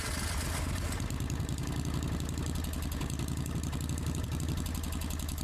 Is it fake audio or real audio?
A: real